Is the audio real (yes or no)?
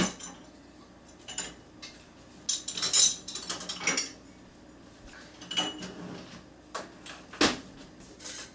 yes